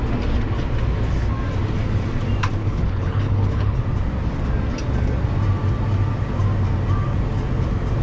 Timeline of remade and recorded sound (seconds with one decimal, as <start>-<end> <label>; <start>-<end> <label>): 0.0-2.6 recorded; 2.6-3.8 remade; 3.8-8.0 recorded